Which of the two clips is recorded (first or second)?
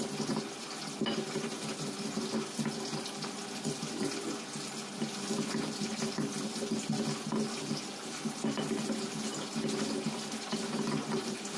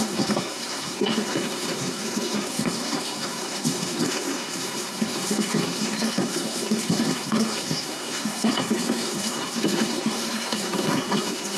first